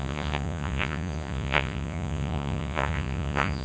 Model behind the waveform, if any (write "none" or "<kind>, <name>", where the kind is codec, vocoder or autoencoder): vocoder, Vocos